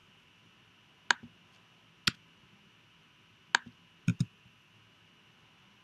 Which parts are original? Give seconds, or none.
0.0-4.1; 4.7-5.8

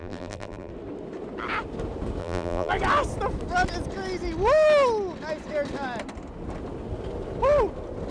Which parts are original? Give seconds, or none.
0.7-2.2; 2.7-8.1

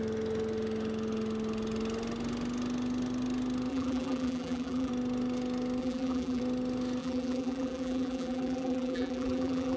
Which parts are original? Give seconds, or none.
0.0-3.7; 4.9-5.8; 6.4-7.0